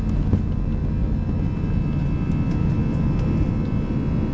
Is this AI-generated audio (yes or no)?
no